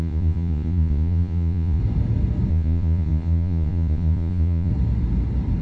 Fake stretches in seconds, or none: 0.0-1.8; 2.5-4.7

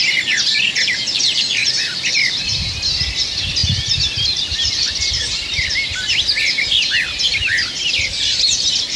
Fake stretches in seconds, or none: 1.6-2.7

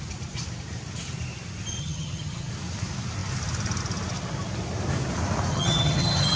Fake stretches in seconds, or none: 1.8-2.5; 5.5-6.4

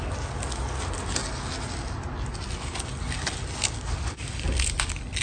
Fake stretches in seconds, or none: none